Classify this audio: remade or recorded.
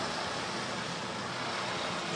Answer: recorded